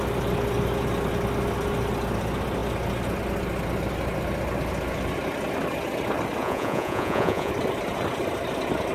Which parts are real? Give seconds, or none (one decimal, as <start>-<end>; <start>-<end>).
0.0-6.4; 7.5-8.9